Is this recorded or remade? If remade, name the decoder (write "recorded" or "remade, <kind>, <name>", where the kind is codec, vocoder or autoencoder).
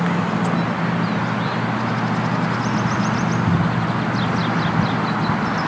recorded